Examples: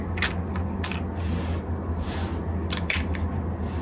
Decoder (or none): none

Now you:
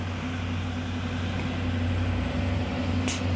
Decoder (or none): none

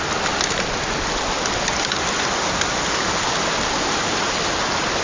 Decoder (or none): none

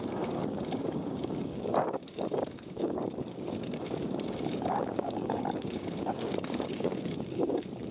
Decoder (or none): codec, DAC